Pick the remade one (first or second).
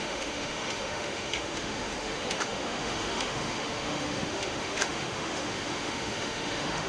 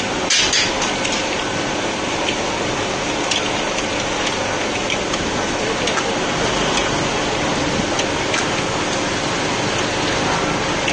first